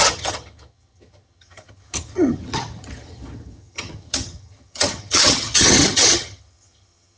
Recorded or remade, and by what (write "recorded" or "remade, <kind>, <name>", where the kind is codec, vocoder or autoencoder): remade, vocoder, HiFi-GAN